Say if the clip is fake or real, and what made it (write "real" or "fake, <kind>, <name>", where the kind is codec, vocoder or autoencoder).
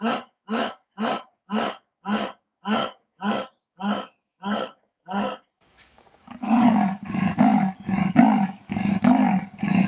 fake, codec, DAC